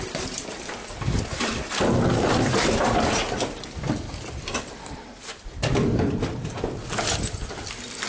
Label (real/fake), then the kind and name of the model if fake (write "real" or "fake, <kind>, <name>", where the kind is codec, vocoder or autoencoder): fake, vocoder, BigVGAN v2